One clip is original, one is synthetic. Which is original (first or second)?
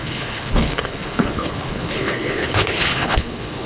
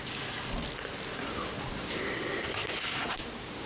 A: second